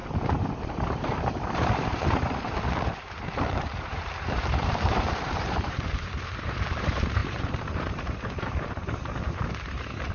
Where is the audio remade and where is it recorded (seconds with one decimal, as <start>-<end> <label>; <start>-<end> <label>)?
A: 0.0-0.7 recorded; 0.7-10.1 remade